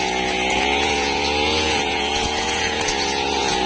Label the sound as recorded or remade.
remade